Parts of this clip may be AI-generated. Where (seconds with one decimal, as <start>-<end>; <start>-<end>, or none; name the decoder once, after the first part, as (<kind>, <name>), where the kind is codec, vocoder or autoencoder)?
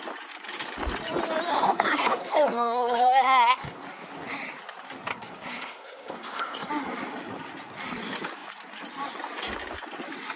1.5-3.8 (codec, SNAC); 5.1-6.7